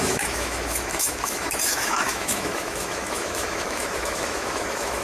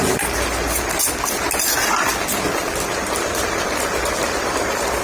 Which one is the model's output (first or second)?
first